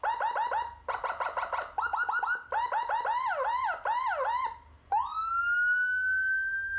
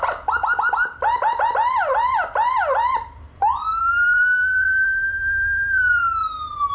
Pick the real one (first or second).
first